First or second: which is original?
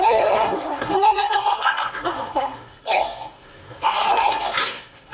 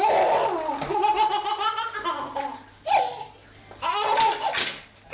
second